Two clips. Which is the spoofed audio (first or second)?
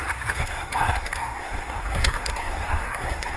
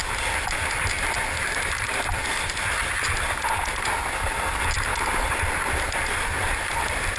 first